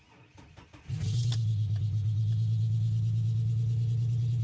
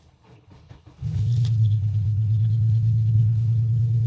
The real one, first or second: first